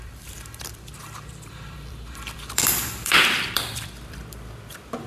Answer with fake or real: fake